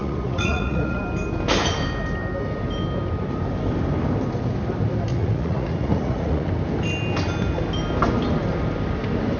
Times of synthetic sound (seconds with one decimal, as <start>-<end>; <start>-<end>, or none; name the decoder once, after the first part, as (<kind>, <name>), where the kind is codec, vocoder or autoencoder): 0.0-1.0 (vocoder, Vocos); 5.1-6.5